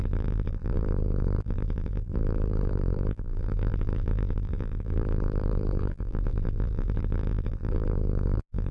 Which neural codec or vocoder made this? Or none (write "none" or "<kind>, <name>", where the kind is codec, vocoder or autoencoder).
vocoder, BigVGAN v2